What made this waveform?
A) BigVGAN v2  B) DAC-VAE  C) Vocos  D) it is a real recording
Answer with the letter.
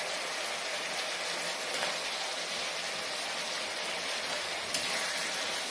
D